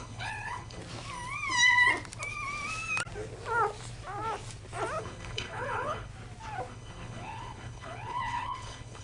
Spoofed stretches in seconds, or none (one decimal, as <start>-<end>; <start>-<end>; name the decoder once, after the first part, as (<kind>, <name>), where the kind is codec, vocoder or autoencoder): 0.0-0.8 (codec, HILCodec); 5.0-6.1; 6.7-9.0